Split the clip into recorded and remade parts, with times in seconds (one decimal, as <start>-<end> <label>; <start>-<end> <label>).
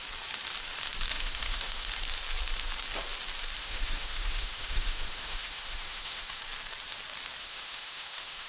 0.0-1.1 recorded; 1.1-1.9 remade; 1.9-3.6 recorded; 3.6-6.4 remade; 6.4-7.4 recorded; 7.4-8.5 remade